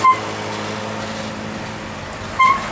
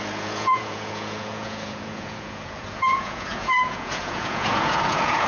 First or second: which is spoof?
second